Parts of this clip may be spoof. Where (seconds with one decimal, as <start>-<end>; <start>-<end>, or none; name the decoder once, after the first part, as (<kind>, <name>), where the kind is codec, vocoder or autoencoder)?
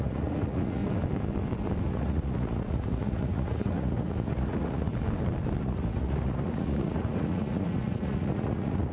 0.0-0.8 (vocoder, Vocos); 1.8-4.9; 5.6-8.9